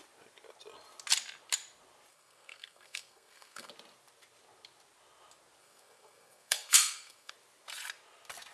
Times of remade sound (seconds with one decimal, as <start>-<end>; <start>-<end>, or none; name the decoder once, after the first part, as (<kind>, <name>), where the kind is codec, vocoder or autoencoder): 2.1-3.7 (codec, SNAC); 5.6-7.3